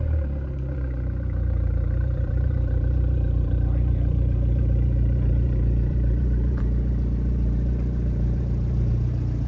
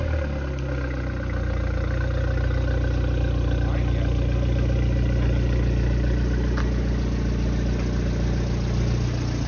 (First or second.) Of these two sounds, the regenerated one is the first